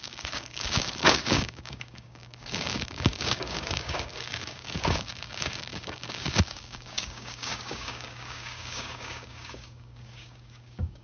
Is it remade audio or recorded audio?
remade